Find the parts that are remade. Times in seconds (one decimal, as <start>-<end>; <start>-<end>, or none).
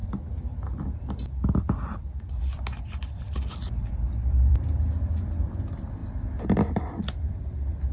2.4-6.0; 6.7-7.9